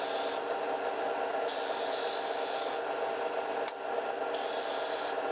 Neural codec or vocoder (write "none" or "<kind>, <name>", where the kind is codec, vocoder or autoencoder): none